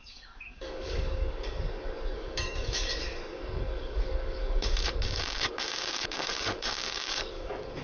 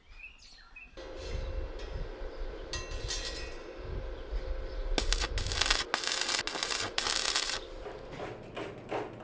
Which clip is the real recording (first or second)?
second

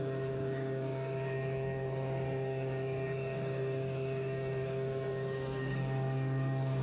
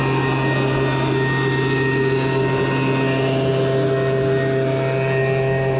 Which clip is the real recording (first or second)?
second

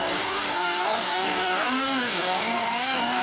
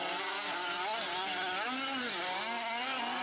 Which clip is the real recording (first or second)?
second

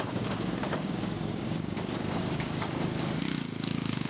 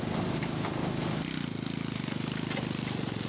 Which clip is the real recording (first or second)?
second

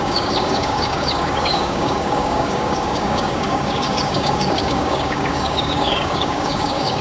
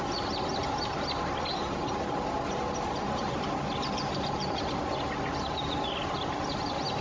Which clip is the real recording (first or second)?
second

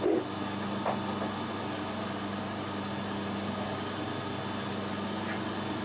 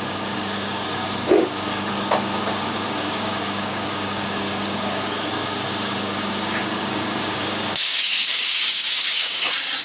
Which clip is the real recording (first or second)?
first